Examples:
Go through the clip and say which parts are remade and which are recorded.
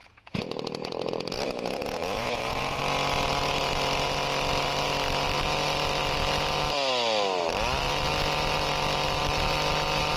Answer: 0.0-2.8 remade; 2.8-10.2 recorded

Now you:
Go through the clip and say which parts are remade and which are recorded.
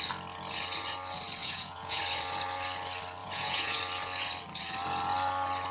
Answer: 0.0-1.4 recorded; 1.4-2.0 remade; 2.0-3.2 recorded; 3.2-3.8 remade; 3.8-5.7 recorded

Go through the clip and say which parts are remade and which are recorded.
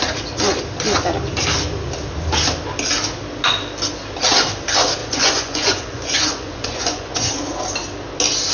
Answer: 0.0-5.0 recorded; 5.0-7.3 remade; 7.3-8.5 recorded